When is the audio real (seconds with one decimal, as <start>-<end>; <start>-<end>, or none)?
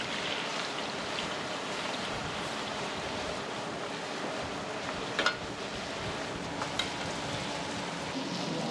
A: 0.0-0.5; 3.7-8.7